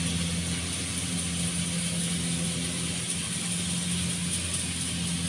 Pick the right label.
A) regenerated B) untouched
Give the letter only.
B